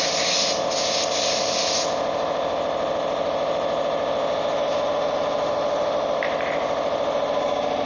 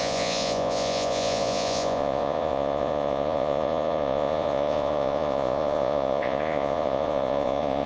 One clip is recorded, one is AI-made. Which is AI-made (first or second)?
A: second